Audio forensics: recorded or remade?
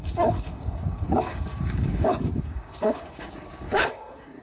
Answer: remade